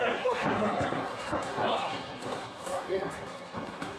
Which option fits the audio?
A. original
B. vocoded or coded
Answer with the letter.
B